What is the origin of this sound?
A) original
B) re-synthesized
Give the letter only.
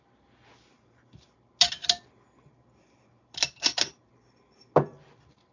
A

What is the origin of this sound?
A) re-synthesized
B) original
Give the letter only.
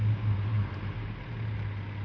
B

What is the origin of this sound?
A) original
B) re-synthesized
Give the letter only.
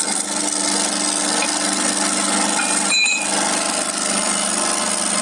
A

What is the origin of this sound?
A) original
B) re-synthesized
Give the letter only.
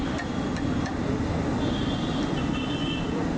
A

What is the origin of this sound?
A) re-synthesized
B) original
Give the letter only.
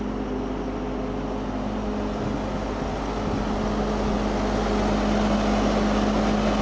B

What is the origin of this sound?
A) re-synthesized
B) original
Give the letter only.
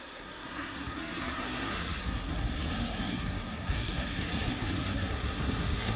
A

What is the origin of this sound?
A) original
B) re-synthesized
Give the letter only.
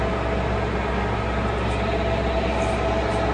A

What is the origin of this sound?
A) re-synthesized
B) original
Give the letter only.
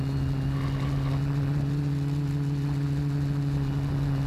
B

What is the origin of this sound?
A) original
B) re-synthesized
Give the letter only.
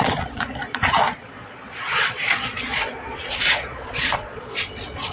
B